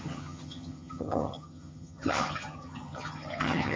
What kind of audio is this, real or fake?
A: fake